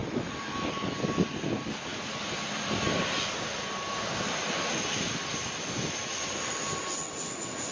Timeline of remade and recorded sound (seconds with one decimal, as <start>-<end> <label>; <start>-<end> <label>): 0.0-7.7 recorded